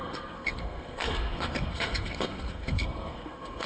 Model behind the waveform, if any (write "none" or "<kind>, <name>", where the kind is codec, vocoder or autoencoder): codec, SNAC